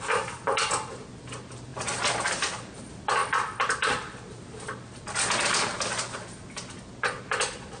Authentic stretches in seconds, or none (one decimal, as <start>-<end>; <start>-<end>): 0.0-7.8